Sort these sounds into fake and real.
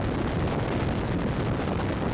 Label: real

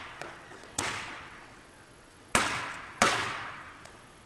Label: fake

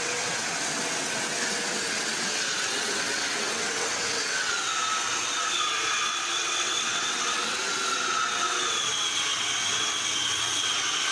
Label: fake